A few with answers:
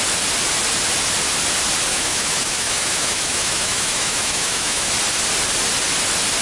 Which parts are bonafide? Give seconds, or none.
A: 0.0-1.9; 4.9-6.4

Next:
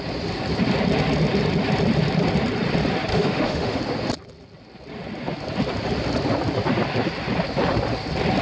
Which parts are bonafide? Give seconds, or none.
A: 0.0-3.1; 3.8-8.4

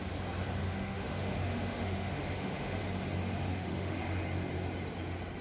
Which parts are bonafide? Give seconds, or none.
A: 0.0-0.6; 2.8-3.5; 4.0-5.4

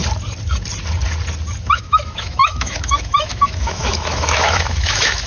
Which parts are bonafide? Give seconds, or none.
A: 0.0-1.6

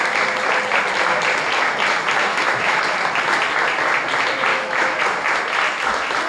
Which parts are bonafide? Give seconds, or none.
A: 0.0-2.3; 2.8-4.5; 5.0-6.3

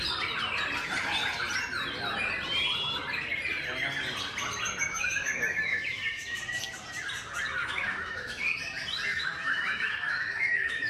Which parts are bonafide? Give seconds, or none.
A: 0.0-4.8; 6.4-7.6; 8.4-9.1

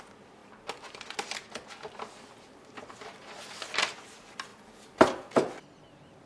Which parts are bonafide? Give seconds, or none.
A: 0.0-6.3